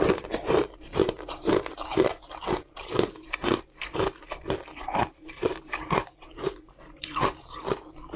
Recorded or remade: remade